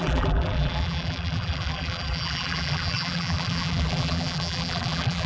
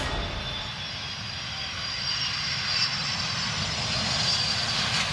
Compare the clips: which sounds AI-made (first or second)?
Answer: first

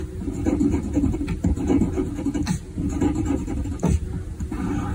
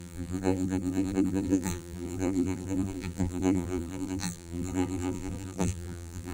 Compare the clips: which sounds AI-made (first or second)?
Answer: second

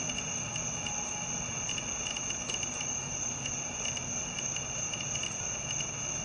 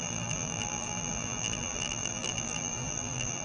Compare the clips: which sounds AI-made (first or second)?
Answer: second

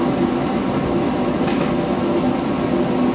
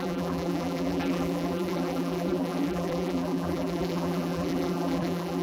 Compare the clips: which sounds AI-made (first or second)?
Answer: second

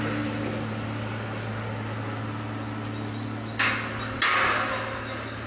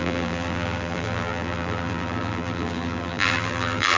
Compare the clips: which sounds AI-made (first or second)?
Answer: second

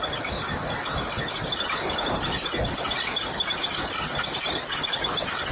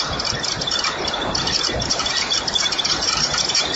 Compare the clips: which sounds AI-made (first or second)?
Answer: second